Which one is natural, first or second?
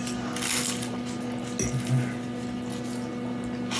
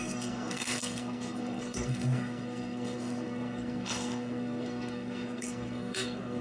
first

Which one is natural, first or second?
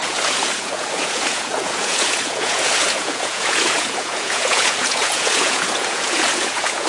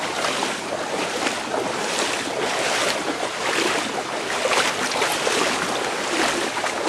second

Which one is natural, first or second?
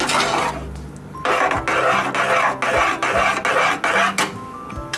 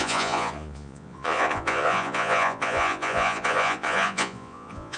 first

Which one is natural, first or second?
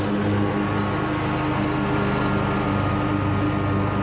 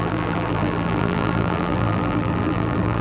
first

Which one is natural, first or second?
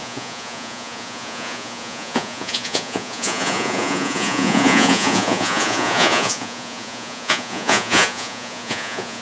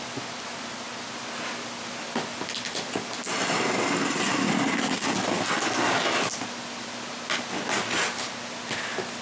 second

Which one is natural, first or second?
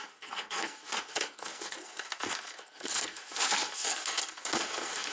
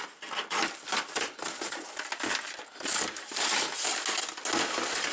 second